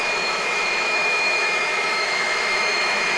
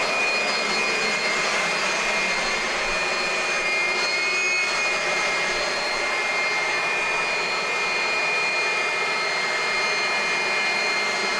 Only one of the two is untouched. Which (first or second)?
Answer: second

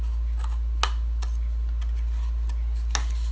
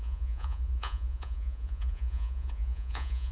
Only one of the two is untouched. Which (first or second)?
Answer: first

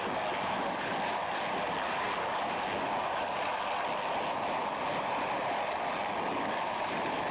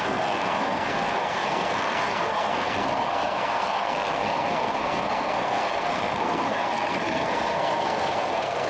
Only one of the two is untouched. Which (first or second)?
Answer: first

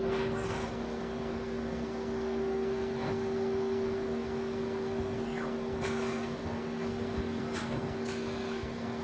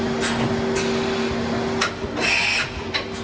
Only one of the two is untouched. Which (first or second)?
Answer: second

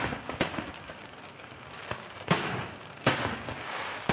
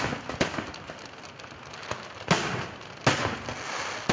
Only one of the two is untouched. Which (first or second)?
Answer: second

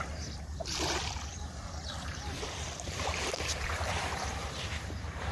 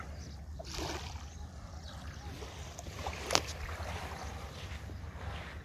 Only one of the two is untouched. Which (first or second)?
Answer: second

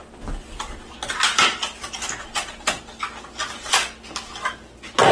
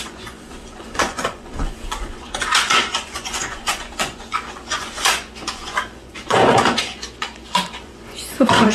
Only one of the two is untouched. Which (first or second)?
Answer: first